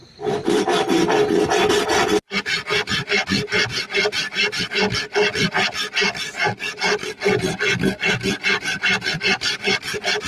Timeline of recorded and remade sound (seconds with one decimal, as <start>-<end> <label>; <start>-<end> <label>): 0.0-10.3 recorded